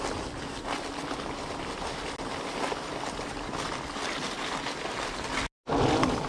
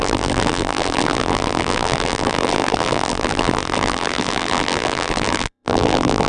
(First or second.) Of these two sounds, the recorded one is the first